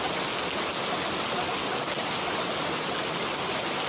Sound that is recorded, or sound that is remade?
recorded